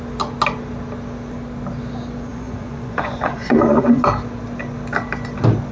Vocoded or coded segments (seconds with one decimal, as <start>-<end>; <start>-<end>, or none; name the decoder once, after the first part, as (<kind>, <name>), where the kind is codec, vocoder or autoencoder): 2.3-4.0 (vocoder, Vocos)